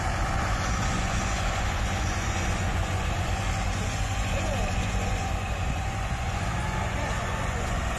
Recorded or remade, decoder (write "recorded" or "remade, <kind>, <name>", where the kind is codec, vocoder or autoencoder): remade, vocoder, Vocos